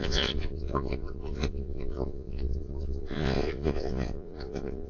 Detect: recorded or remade remade